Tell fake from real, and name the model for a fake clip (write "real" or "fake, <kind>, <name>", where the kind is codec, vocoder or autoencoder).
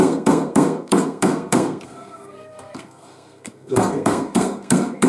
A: fake, codec, SNAC